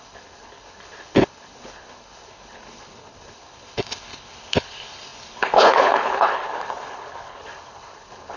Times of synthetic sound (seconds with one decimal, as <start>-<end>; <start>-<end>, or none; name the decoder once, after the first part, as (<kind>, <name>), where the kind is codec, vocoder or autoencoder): 0.0-8.4 (codec, HILCodec)